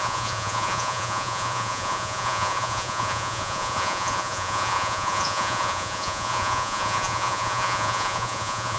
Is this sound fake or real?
fake